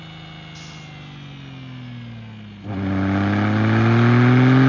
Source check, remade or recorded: recorded